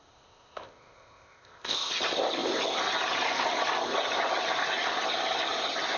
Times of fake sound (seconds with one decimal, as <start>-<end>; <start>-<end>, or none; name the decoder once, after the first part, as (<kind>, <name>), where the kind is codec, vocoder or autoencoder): 0.0-1.9 (codec, ZipCodec)